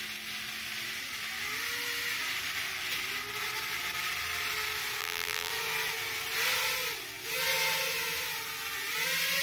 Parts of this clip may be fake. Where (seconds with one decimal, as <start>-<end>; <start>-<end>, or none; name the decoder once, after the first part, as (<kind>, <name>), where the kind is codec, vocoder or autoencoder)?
5.0-5.5 (vocoder, BigVGAN v2)